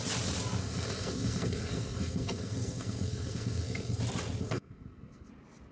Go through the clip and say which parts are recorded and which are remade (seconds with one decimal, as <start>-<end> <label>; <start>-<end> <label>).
0.0-0.6 recorded; 0.6-4.0 remade; 4.0-4.4 recorded; 4.4-5.3 remade; 5.3-5.7 recorded